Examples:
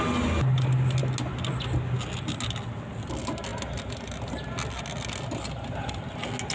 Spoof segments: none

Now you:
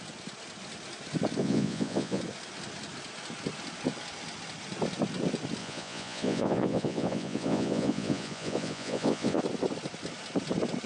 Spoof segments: 1.4-2.2; 5.6-9.4

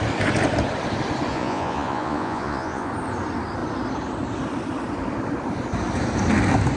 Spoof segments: 1.3-2.9

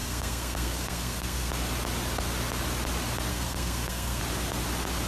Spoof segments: 0.0-1.5; 3.3-4.2

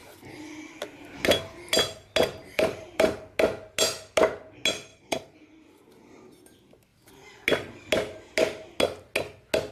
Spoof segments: 2.4-3.2; 4.9-5.5